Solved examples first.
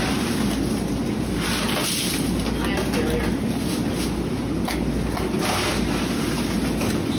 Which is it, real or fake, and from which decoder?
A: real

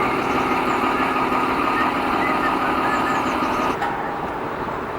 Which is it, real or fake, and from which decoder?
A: fake, vocoder, BigVGAN v2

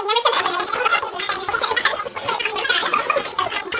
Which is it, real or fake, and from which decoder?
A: fake, vocoder, BigVGAN v2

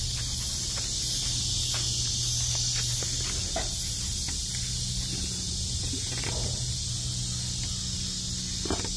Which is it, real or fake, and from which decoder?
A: real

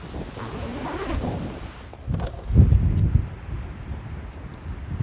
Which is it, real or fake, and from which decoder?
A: real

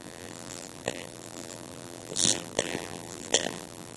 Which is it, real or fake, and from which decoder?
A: fake, vocoder, BigVGAN v2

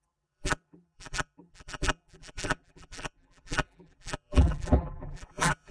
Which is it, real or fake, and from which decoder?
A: fake, vocoder, BigVGAN v2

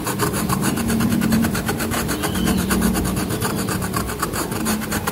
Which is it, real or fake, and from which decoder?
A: fake, vocoder, BigVGAN v2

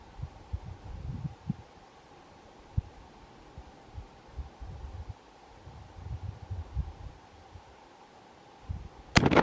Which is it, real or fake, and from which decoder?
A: real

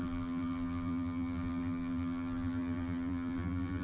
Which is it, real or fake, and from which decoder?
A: fake, vocoder, BigVGAN v2